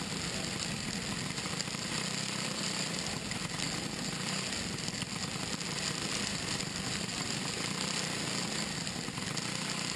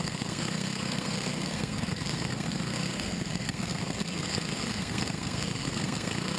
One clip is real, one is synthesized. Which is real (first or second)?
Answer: first